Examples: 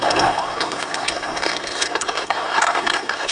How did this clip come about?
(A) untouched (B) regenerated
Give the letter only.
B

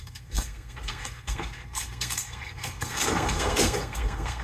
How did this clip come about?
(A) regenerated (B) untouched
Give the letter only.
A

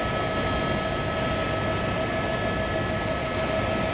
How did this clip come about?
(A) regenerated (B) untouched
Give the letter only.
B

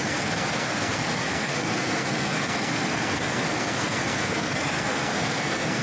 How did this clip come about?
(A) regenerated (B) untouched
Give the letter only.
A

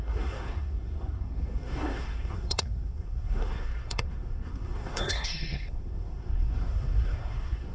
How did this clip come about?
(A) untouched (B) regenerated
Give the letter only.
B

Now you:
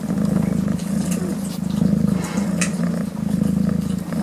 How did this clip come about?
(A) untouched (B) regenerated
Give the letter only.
A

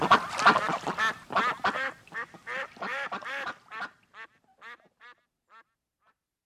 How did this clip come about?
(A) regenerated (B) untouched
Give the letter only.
B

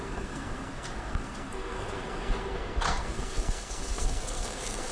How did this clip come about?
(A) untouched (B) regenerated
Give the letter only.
B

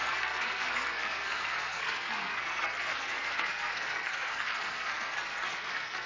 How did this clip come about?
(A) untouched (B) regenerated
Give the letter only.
B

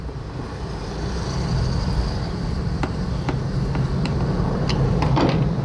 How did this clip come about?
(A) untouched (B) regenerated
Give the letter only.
A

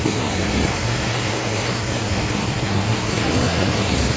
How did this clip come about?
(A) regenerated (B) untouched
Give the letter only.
A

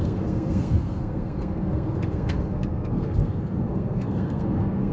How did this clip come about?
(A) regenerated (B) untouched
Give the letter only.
A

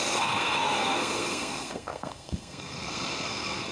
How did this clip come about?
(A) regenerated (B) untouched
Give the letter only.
A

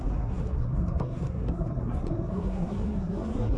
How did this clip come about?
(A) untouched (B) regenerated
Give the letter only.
B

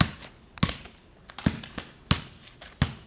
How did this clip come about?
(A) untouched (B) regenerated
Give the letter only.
A